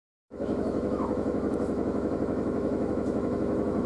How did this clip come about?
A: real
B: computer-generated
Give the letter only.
B